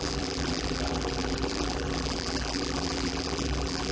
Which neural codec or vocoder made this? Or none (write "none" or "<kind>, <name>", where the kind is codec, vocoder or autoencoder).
vocoder, BigVGAN v2